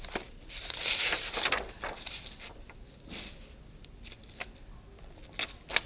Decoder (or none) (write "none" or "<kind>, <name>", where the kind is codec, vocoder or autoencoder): none